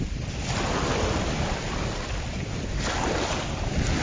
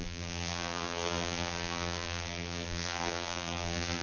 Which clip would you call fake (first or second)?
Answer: second